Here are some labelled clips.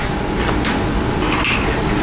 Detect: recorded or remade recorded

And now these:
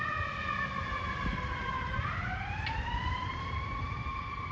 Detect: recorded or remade remade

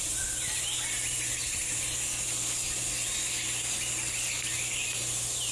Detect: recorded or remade recorded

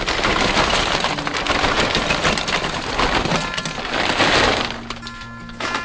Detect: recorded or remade recorded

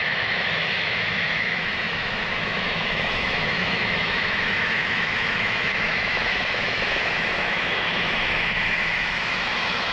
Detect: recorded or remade remade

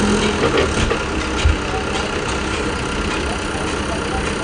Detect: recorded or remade recorded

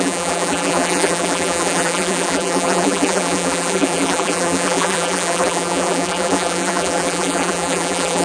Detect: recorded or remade remade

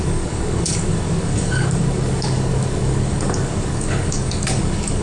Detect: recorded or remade remade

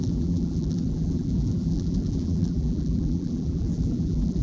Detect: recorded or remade remade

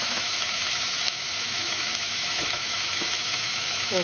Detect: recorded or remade remade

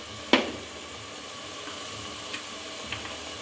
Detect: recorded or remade recorded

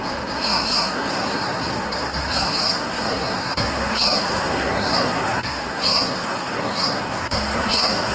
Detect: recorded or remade remade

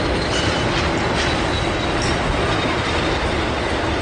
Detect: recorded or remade recorded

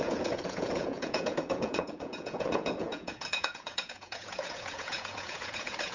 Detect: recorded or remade remade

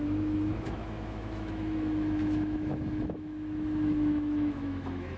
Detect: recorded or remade remade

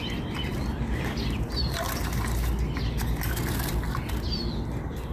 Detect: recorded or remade recorded